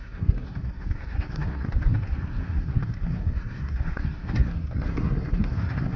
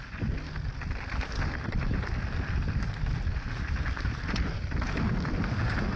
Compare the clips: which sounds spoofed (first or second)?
first